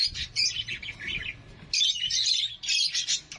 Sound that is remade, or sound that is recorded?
recorded